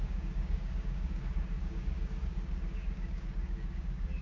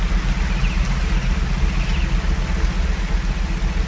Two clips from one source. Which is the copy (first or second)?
first